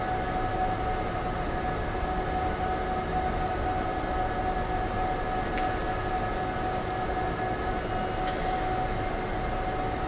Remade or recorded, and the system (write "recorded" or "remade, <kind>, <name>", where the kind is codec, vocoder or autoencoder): recorded